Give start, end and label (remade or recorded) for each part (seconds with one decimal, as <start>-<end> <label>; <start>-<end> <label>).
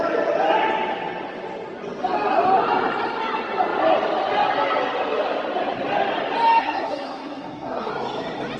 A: 0.0-6.6 recorded; 6.6-7.9 remade; 7.9-8.6 recorded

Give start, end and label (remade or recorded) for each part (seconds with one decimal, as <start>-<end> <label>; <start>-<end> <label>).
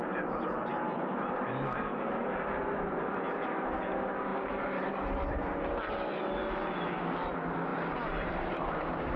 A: 0.0-3.8 remade; 3.8-4.3 recorded; 4.3-6.1 remade; 6.1-7.7 recorded; 7.7-9.2 remade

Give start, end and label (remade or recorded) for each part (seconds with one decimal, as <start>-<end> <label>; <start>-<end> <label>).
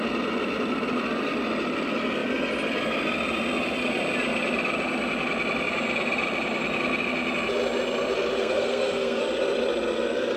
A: 0.0-8.4 recorded; 8.4-9.2 remade; 9.2-10.4 recorded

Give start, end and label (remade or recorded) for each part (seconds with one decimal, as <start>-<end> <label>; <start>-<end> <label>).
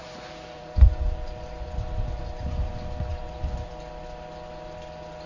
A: 0.0-2.7 remade; 2.7-3.1 recorded; 3.1-3.7 remade; 3.7-5.3 recorded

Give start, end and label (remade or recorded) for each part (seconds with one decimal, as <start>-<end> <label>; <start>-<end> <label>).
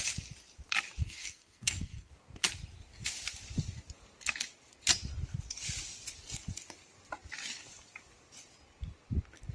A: 0.0-1.0 recorded; 1.0-2.1 remade; 2.1-9.5 recorded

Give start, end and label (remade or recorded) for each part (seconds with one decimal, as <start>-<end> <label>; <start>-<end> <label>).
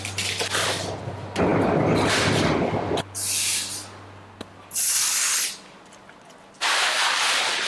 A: 0.0-7.7 recorded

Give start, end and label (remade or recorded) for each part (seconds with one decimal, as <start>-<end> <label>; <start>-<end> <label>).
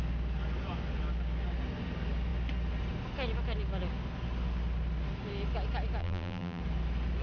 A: 0.0-6.0 recorded; 6.0-6.6 remade; 6.6-7.2 recorded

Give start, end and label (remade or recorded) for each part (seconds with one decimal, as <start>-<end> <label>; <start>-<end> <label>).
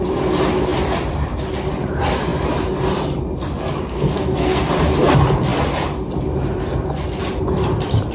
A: 0.0-3.9 recorded; 3.9-4.6 remade; 4.6-8.1 recorded